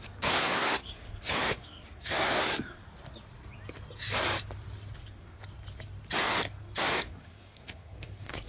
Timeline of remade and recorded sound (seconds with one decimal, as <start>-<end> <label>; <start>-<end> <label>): 0.0-2.8 remade; 2.8-5.0 recorded; 5.0-5.4 remade; 5.4-6.9 recorded; 6.9-8.5 remade